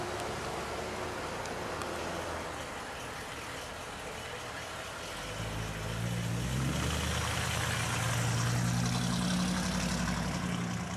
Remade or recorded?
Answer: recorded